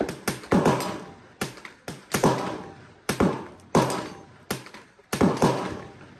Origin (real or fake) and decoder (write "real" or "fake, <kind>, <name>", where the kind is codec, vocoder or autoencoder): real